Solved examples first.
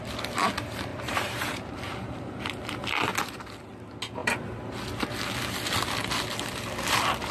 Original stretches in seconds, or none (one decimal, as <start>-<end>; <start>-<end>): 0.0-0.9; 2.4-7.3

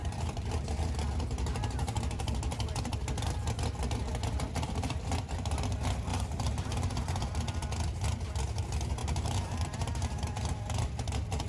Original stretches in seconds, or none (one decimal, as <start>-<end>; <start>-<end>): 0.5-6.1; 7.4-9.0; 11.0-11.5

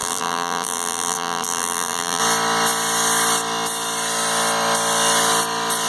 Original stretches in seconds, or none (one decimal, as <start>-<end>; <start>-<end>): 2.2-5.9

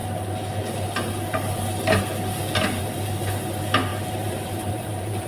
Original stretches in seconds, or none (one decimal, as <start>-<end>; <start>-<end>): 0.0-3.9

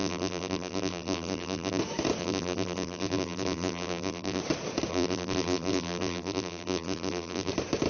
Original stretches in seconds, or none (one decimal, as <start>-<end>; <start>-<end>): 1.8-2.2; 4.4-4.9; 7.5-7.9

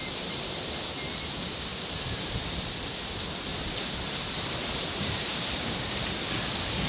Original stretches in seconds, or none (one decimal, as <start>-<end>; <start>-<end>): 0.6-1.7; 2.6-3.5; 6.1-6.9